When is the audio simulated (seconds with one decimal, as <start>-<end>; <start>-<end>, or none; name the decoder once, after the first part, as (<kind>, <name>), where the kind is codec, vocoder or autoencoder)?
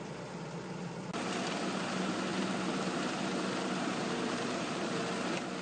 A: 2.3-4.9 (vocoder, BigVGAN v2)